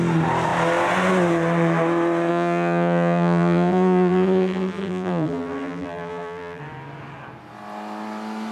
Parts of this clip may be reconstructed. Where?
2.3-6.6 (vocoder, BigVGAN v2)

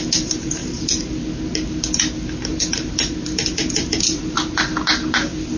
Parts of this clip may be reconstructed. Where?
0.6-1.1 (vocoder, BigVGAN v2); 2.5-4.2

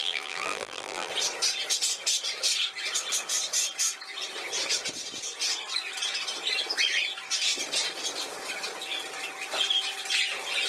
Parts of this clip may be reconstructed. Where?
0.0-1.1 (vocoder, BigVGAN v2)

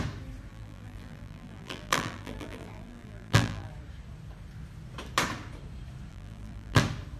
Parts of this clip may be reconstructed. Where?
0.5-3.7 (vocoder, BigVGAN v2); 6.1-6.8

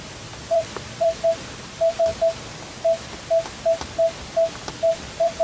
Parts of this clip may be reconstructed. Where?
0.0-2.1 (vocoder, BigVGAN v2); 4.7-5.4